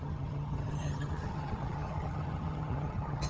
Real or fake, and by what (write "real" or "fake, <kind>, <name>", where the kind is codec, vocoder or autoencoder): fake, vocoder, HiFi-GAN